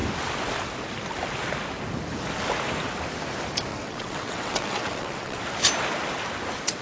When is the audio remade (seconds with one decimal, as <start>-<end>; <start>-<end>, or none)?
3.7-5.4